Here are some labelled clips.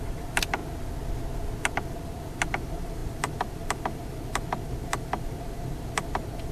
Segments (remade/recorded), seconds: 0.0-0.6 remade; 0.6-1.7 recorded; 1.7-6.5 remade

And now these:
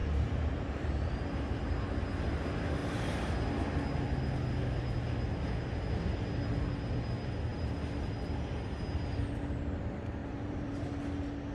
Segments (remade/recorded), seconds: 0.0-1.1 remade; 1.1-2.8 recorded; 2.8-3.5 remade; 3.5-10.2 recorded; 10.2-11.0 remade; 11.0-11.5 recorded

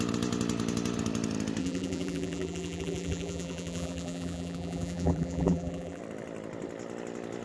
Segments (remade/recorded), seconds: 0.0-1.6 recorded; 1.6-6.0 remade; 6.0-7.4 recorded

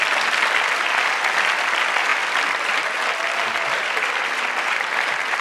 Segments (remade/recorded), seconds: 0.0-2.1 recorded; 2.1-4.4 remade; 4.4-5.4 recorded

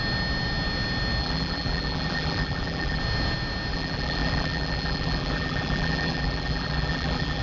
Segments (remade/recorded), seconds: 0.0-1.2 recorded; 1.2-3.0 remade; 3.0-3.7 recorded; 3.7-7.4 remade

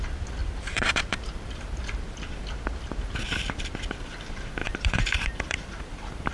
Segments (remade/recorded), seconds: 0.0-0.4 recorded; 0.4-2.0 remade; 2.0-4.6 recorded; 4.6-6.3 remade

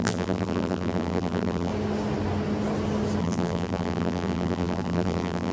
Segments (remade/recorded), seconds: 0.0-1.7 remade; 1.7-3.2 recorded; 3.2-5.5 remade